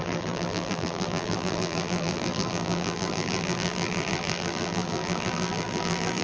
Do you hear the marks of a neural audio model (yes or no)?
yes